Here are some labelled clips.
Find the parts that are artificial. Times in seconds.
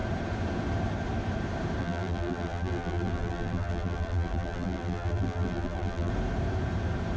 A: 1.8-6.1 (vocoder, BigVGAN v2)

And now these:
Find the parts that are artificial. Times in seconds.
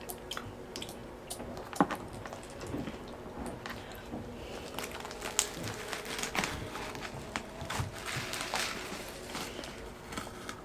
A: none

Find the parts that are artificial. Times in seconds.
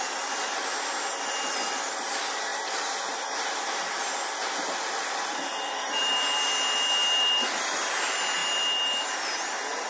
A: 2.5-3.0 (vocoder, BigVGAN v2)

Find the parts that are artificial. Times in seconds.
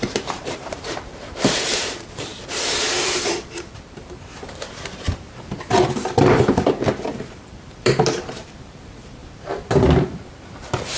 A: 0.0-11.0 (vocoder, BigVGAN v2)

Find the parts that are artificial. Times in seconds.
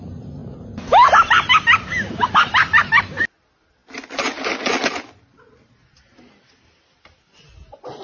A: none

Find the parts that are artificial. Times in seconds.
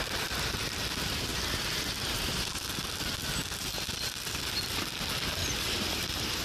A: 1.3-2.6 (vocoder, BigVGAN v2); 5.4-6.4